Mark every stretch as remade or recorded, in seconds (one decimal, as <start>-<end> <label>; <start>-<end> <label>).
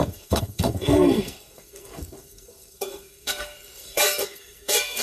0.0-5.0 remade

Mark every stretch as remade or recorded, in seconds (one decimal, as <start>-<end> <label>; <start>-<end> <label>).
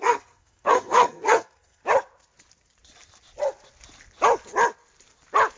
0.0-1.8 remade; 1.8-5.6 recorded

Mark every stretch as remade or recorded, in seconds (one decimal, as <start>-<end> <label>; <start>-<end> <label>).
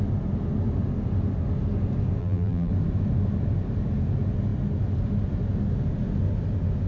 0.0-2.2 recorded; 2.2-2.7 remade; 2.7-6.9 recorded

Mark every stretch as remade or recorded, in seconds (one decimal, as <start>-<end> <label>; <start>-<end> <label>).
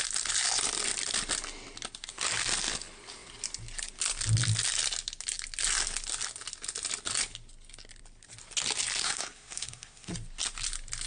0.0-9.0 recorded; 9.0-10.1 remade; 10.1-11.1 recorded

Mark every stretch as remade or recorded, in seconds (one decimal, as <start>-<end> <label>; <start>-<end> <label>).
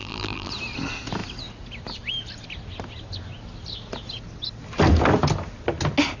0.0-0.5 remade; 0.5-6.2 recorded